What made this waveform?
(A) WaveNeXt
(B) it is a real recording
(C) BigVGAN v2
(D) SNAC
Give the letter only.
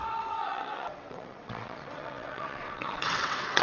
A